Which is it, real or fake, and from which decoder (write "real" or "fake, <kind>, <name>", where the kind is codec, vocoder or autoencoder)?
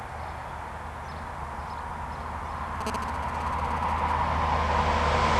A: real